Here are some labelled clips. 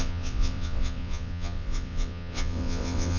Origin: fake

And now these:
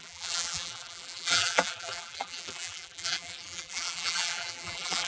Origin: fake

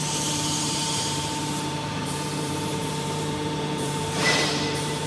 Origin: fake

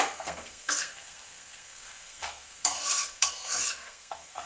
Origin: fake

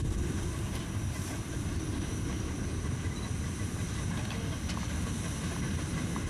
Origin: real